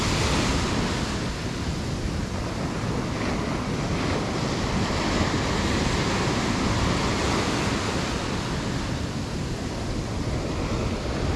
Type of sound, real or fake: real